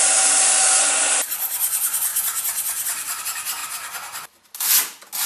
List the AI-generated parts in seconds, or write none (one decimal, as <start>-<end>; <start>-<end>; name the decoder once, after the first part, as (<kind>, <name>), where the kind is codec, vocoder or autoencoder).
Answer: none